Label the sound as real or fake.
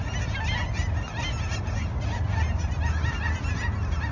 real